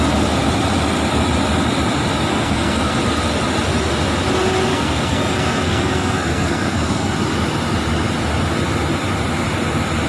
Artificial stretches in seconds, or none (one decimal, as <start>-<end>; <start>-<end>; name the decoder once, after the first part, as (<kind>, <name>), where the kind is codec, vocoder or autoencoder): 2.3-3.0 (codec, SNAC); 4.7-7.1